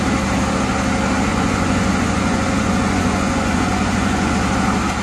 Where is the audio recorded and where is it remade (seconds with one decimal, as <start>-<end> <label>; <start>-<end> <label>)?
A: 0.0-1.3 recorded; 1.3-4.3 remade; 4.3-5.0 recorded